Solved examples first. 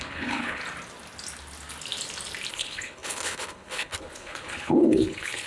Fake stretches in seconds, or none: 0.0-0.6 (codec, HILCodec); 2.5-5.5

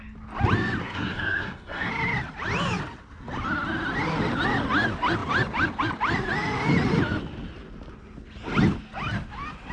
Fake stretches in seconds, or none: 0.8-1.9 (codec, SNAC)